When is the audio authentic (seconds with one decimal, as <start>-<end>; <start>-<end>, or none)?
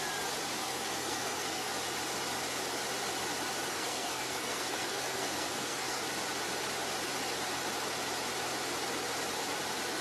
0.0-0.6; 1.7-3.7; 6.0-10.0